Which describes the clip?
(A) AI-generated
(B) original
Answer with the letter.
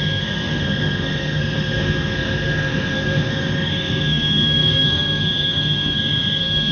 A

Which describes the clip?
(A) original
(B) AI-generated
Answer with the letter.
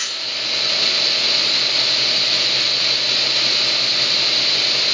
A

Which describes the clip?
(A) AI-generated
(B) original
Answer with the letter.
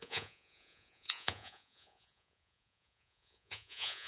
A